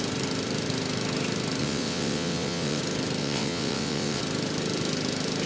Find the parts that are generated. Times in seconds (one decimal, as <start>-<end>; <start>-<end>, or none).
1.6-2.8; 3.2-4.2